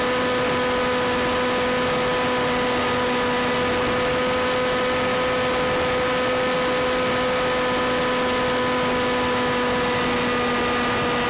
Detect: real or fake real